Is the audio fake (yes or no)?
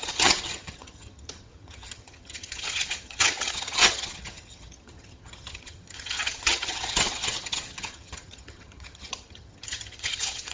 yes